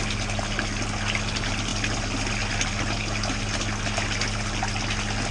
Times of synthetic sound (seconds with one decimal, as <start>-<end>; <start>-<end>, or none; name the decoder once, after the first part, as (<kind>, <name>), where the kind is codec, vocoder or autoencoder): none

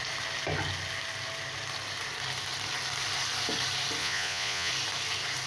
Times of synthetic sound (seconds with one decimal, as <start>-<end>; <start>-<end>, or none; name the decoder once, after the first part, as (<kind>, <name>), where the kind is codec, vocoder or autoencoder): 4.0-4.7 (vocoder, Vocos)

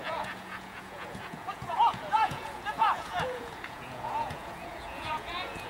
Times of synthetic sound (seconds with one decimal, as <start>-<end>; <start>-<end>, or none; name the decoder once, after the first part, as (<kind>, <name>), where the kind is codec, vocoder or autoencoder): 0.0-5.7 (vocoder, Vocos)

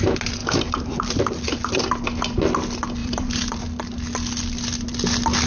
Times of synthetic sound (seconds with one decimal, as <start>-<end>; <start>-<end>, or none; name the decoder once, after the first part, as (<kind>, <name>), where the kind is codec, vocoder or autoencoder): 0.4-1.8 (vocoder, BigVGAN v2); 3.0-3.6

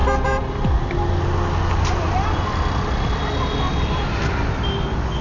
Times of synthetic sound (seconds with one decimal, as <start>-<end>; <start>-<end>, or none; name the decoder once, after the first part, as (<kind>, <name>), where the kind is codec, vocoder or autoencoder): none

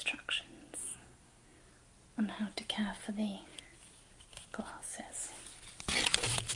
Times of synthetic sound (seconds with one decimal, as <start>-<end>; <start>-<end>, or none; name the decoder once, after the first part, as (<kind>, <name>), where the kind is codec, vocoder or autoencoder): 0.8-1.6 (codec, SNAC)